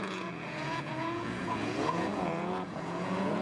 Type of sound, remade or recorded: remade